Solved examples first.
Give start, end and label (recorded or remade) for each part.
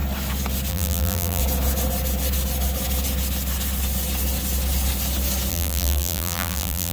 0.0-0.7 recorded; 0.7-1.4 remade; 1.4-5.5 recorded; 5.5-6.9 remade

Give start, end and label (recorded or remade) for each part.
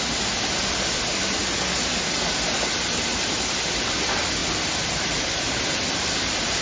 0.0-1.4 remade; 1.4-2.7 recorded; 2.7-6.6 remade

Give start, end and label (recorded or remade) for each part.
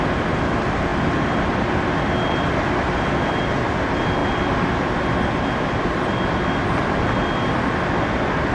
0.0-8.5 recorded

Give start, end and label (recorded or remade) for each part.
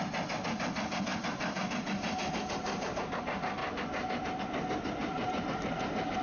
0.0-1.1 recorded; 1.1-3.2 remade; 3.2-3.6 recorded; 3.6-4.4 remade; 4.4-5.0 recorded; 5.0-5.6 remade; 5.6-6.2 recorded